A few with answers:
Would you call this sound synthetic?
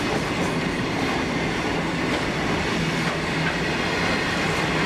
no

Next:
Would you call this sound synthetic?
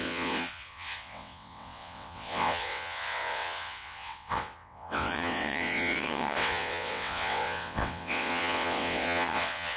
yes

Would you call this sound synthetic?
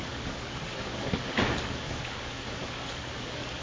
yes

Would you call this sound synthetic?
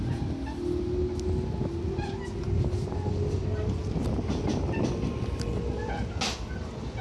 no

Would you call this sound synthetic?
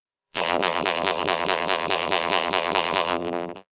yes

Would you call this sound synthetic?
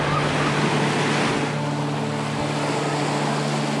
no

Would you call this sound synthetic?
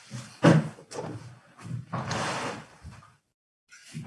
no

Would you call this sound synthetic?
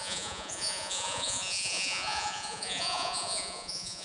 yes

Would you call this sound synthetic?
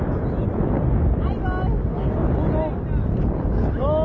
no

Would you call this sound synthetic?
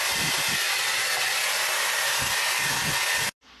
no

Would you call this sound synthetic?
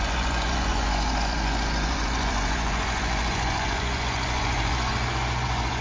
yes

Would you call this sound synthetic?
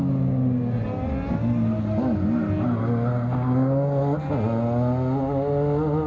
no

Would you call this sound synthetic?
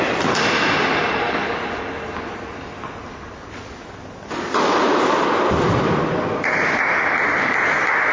no